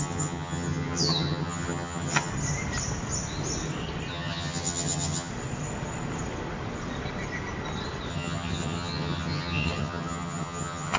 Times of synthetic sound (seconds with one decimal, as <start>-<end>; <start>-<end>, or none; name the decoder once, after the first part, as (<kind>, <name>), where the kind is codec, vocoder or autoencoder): 0.0-2.3 (vocoder, HiFi-GAN); 4.1-5.3; 8.1-11.0